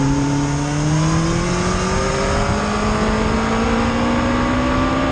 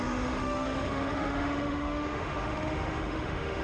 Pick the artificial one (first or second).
second